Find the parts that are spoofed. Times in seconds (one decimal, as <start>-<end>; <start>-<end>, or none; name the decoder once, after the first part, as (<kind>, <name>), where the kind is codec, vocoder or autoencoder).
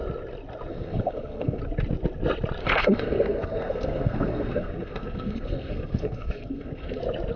0.7-1.6 (codec, SNAC); 2.6-7.0